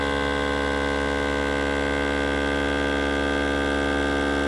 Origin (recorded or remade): recorded